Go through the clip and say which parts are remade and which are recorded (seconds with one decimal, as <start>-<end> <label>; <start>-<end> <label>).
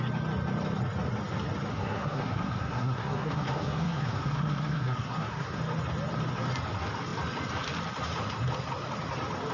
0.0-1.7 recorded; 1.7-5.6 remade; 5.6-9.5 recorded